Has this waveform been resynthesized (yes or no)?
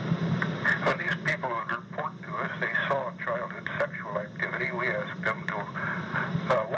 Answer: no